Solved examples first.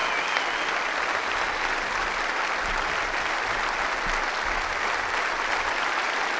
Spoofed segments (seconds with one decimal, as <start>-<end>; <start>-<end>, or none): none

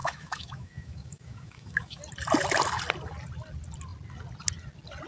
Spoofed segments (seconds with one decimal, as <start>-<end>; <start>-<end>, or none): 0.0-2.0

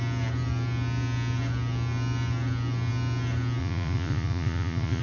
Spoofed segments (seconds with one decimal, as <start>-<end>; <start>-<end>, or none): 3.6-5.0